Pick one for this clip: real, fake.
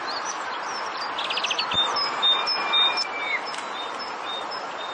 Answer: real